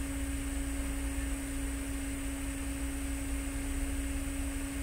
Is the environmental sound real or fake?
real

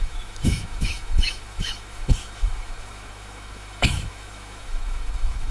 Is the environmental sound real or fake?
fake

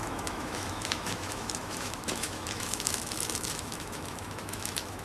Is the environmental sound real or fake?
fake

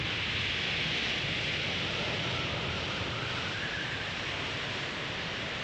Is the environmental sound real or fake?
real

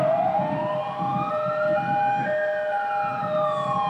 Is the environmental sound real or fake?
real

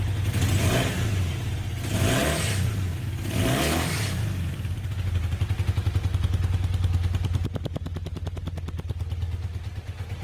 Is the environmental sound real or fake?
real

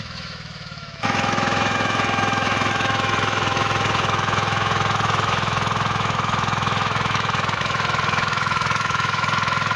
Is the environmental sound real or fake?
fake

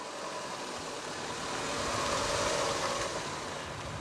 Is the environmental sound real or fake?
real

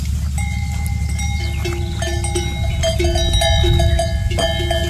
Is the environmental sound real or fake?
real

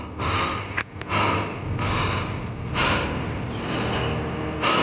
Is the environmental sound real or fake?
real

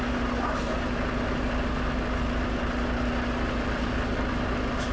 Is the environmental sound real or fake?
real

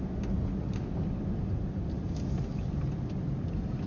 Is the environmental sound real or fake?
real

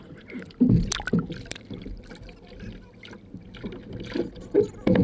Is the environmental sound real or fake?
real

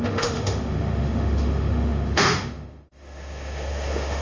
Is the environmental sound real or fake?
fake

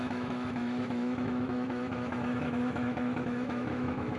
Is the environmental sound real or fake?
fake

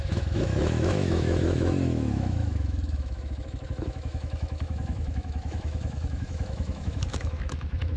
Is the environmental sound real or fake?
fake